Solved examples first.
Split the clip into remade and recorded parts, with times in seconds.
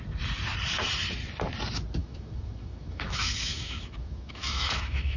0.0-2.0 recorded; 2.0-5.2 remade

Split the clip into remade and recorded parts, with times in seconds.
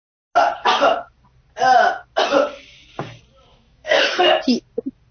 0.0-3.5 recorded; 3.5-4.4 remade; 4.4-5.1 recorded